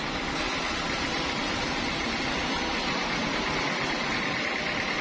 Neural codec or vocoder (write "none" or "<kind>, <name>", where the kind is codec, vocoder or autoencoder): none